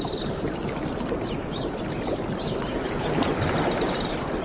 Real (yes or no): yes